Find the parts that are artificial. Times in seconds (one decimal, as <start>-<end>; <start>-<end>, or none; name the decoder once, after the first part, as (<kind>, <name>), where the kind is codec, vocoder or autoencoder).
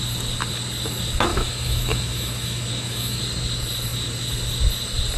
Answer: 1.3-3.2 (autoencoder, DAC-VAE)